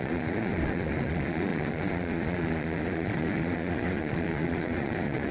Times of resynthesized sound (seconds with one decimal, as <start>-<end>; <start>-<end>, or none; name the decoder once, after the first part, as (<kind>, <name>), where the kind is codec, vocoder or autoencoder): 0.0-5.3 (vocoder, Vocos)